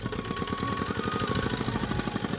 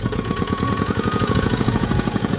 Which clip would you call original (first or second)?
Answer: first